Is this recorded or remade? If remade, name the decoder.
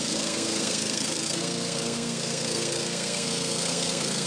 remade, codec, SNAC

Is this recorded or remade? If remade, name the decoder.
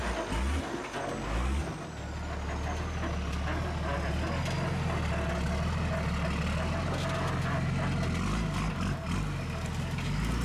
recorded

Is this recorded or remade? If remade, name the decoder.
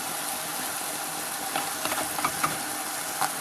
recorded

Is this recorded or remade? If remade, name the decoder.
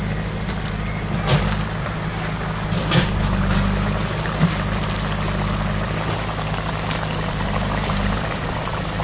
recorded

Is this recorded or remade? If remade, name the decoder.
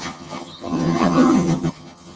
remade, vocoder, HiFi-GAN